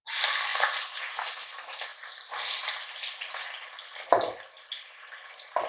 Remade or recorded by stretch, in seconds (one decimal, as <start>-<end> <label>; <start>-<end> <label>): 0.0-0.5 recorded; 0.5-1.0 remade; 1.0-5.7 recorded